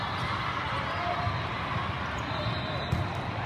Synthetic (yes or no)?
no